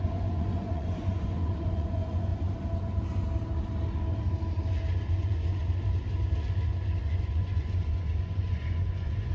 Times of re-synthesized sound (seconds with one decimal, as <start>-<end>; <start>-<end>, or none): 0.0-2.3; 5.1-5.6; 7.0-9.3